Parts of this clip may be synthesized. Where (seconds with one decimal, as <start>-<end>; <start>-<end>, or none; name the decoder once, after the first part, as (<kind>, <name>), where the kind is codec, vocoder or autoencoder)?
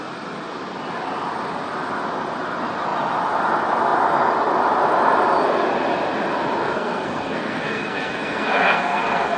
6.6-9.4 (codec, SNAC)